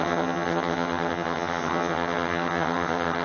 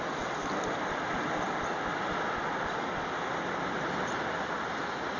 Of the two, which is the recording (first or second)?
second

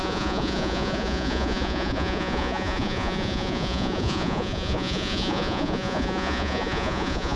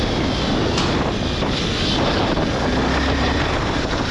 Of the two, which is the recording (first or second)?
second